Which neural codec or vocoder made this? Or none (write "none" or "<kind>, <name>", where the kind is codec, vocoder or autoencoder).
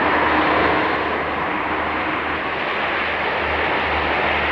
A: none